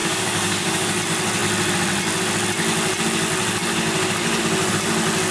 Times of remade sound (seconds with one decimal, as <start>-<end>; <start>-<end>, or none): 0.0-1.0